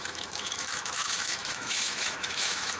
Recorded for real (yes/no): no